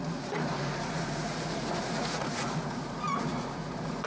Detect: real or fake fake